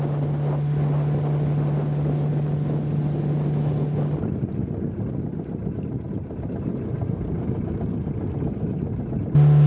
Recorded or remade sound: recorded